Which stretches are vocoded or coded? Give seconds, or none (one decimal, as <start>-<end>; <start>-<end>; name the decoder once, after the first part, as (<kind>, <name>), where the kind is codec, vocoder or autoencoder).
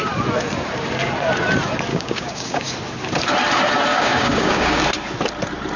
1.9-2.7 (codec, DAC); 3.9-4.8